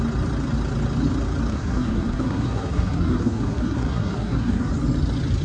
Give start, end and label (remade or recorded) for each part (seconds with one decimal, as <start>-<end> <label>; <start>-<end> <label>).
0.0-1.5 recorded; 1.5-4.7 remade; 4.7-5.4 recorded